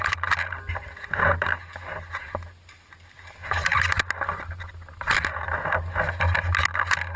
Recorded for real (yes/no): yes